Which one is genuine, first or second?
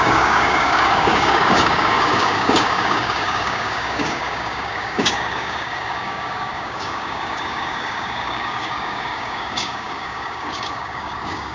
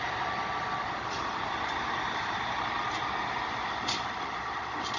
second